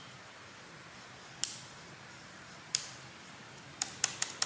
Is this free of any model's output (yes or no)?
yes